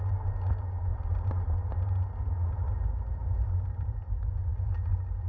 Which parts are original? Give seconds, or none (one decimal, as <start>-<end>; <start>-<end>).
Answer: 0.0-0.9; 1.5-3.2; 3.9-5.3